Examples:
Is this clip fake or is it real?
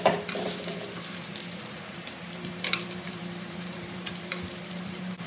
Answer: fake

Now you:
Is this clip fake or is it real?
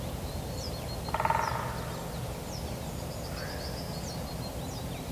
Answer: real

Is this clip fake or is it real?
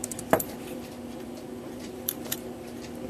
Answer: fake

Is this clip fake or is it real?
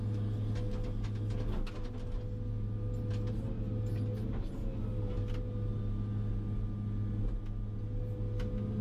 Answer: real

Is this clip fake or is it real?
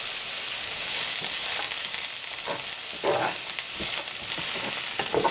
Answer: real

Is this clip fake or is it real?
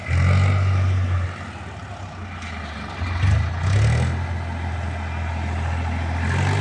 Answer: real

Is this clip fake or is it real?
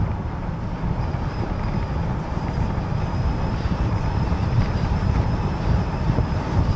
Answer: fake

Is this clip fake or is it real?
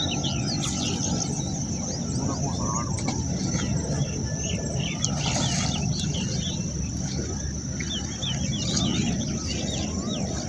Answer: real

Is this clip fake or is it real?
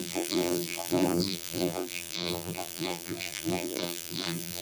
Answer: fake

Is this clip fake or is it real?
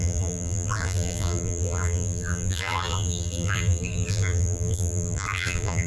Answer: fake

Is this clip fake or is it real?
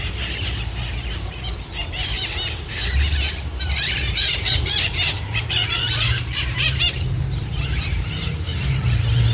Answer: fake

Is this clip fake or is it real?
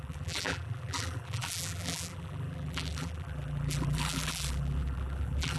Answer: fake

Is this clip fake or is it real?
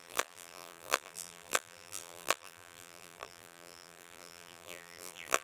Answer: fake